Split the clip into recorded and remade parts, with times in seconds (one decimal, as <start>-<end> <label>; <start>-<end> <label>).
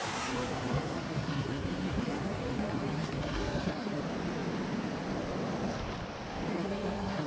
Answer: 0.0-4.0 remade; 4.0-6.5 recorded; 6.5-7.3 remade